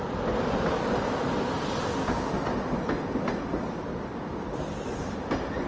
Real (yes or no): yes